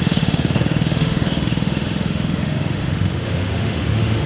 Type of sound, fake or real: fake